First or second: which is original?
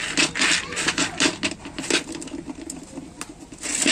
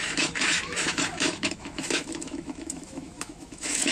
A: first